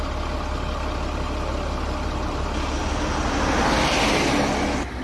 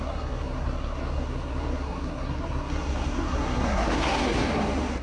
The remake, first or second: second